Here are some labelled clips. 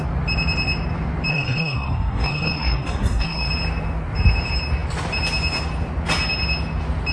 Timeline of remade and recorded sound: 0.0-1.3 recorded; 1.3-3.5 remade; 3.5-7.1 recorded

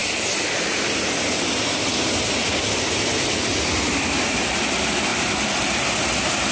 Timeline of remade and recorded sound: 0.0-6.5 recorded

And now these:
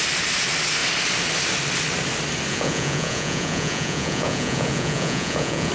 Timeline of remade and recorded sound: 0.0-2.5 recorded; 2.5-5.7 remade

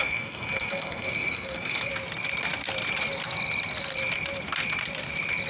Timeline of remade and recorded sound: 0.0-1.9 remade; 1.9-5.5 recorded

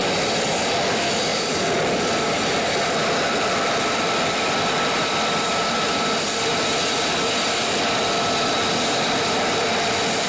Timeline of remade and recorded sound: 0.0-1.3 recorded; 1.3-6.4 remade; 6.4-10.3 recorded

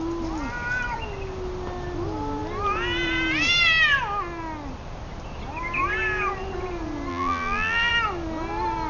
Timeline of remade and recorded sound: 0.0-7.1 recorded; 7.1-7.9 remade; 7.9-8.9 recorded